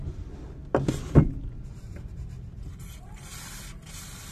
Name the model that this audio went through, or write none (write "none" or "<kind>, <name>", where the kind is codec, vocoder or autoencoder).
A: none